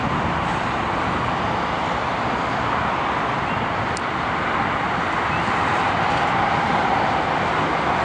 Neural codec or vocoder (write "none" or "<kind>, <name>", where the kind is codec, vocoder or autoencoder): none